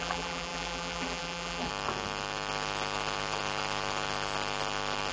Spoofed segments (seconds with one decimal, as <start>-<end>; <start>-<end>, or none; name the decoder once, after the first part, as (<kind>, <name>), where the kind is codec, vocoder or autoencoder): 0.0-1.7 (vocoder, BigVGAN v2)